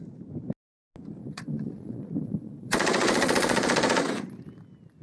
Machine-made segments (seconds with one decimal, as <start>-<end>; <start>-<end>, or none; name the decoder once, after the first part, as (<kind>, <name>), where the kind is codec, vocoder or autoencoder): 1.2-4.2 (vocoder, Vocos)